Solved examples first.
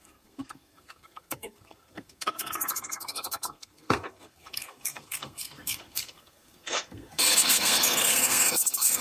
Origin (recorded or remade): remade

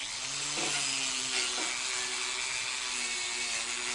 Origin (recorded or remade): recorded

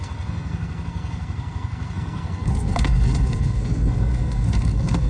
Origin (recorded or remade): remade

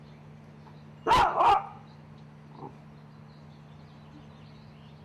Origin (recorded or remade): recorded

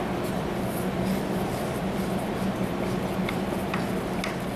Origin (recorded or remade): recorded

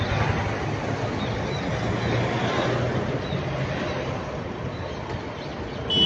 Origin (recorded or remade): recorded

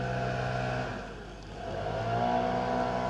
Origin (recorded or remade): recorded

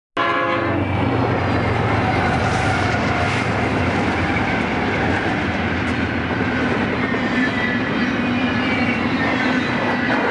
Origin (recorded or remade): recorded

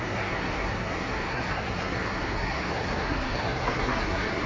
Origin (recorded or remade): remade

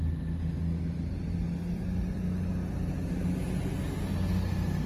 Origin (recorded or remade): recorded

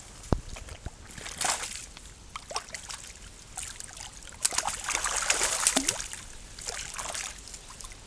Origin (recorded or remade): recorded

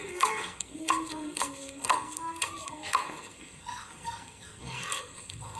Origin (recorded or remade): remade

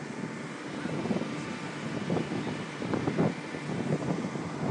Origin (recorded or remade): recorded